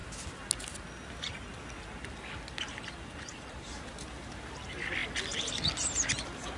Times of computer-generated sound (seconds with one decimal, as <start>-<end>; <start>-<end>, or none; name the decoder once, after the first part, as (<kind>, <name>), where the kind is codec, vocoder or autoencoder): 3.3-4.1 (vocoder, BigVGAN v2)

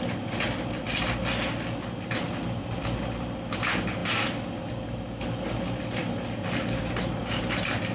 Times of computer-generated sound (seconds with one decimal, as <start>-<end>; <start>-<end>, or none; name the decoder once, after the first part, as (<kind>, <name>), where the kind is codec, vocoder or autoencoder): none

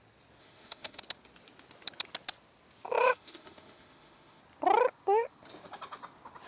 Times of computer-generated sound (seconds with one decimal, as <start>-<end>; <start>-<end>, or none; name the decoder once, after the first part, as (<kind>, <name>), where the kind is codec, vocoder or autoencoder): 0.4-1.0 (autoencoder, DAC-VAE); 3.0-4.4

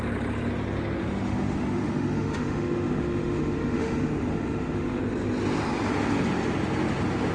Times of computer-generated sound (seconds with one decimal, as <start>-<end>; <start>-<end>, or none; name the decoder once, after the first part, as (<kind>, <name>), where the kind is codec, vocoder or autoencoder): 1.0-5.0 (autoencoder, DAC-VAE)